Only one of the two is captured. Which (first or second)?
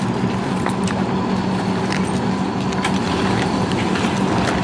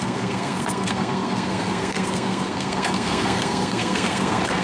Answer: first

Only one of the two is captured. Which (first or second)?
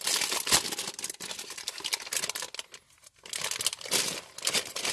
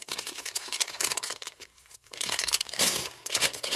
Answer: first